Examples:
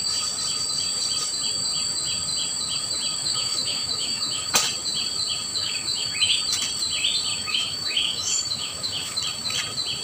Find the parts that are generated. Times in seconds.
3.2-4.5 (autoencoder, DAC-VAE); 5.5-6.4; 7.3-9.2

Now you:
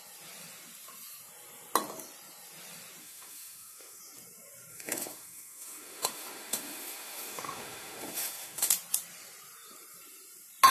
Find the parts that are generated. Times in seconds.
3.0-4.0 (autoencoder, DAC-VAE); 4.7-8.7

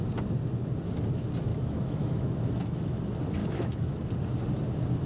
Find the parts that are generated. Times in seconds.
1.5-3.0 (autoencoder, DAC-VAE); 3.4-4.1

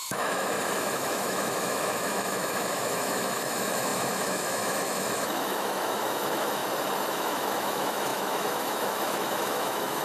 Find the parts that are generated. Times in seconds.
0.0-6.6 (autoencoder, DAC-VAE); 7.1-10.0